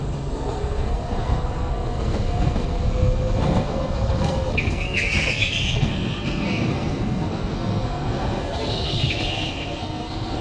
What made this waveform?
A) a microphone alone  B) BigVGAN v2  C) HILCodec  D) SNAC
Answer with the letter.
D